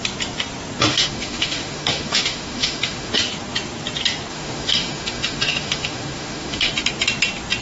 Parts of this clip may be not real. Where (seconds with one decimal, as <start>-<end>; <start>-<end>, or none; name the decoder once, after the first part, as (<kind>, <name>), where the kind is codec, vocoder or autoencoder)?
0.9-3.1 (autoencoder, DAC-VAE); 4.3-6.7